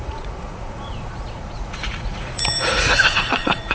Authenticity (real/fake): fake